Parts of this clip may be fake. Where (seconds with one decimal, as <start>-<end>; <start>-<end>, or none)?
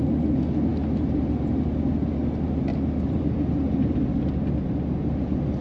2.7-3.2